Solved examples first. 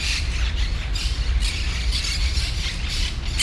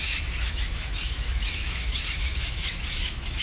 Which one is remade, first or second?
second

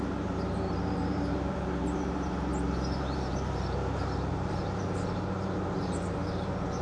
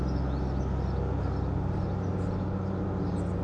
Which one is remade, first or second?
first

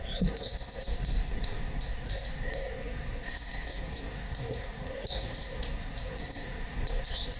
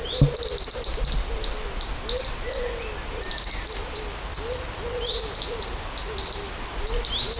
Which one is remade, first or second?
first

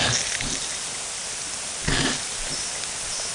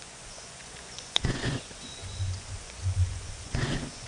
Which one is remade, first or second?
second